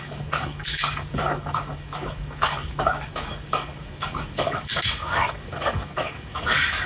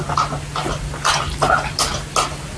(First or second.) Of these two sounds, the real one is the second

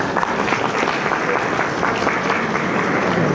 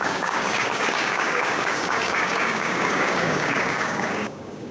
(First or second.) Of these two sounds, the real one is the first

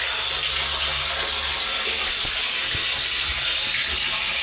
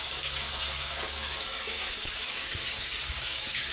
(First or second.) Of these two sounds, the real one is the first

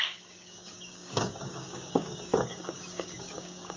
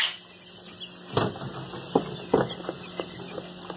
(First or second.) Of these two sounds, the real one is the second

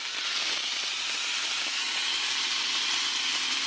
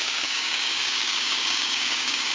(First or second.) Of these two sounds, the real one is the first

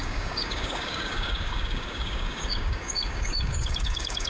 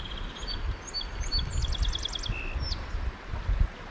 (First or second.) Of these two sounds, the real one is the second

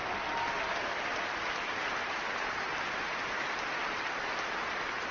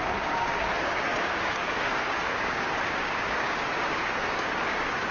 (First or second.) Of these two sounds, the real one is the first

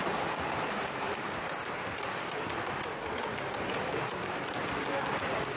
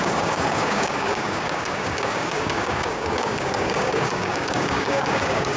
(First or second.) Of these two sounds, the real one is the first